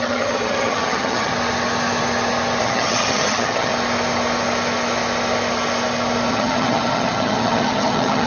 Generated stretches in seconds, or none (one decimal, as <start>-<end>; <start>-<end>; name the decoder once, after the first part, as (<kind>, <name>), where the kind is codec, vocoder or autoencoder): 0.0-1.3 (vocoder, HiFi-GAN); 2.6-3.7; 6.3-8.3